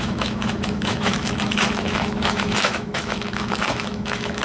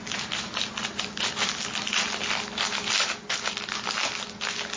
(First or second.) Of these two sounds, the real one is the second